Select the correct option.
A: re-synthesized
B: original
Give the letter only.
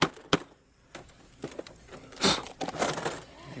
B